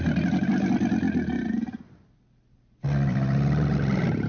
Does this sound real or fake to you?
real